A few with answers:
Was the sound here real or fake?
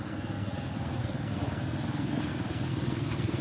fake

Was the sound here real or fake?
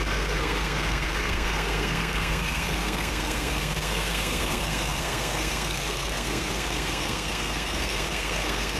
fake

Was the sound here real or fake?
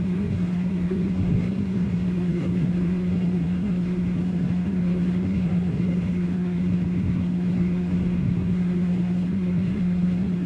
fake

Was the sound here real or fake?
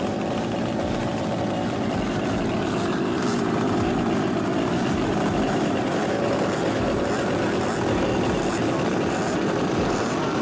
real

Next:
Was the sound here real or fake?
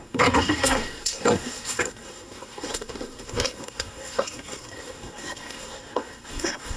fake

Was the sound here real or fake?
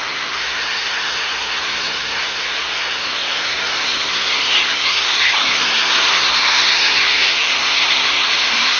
fake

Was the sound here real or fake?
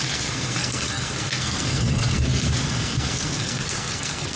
fake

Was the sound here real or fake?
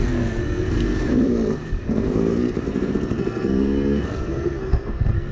fake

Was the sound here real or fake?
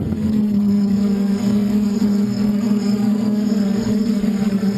fake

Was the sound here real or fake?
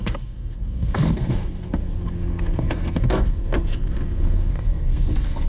fake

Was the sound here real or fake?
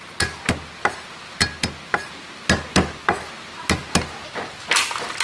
real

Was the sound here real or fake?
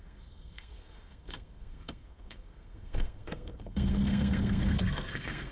fake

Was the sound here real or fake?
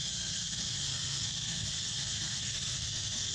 fake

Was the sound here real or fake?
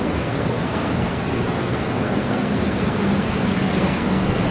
fake